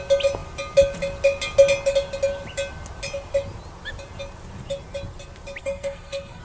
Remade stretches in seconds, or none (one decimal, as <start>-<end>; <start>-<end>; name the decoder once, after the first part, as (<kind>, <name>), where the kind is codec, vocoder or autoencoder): 5.6-6.4 (codec, SNAC)